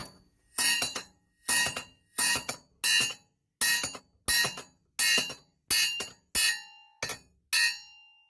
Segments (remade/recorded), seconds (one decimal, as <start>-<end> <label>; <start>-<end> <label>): 0.0-2.5 remade; 2.5-8.3 recorded